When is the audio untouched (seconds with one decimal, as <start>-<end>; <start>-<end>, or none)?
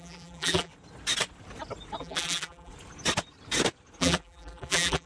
0.7-2.0; 2.7-4.0